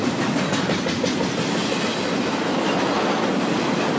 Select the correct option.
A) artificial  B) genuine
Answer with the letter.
B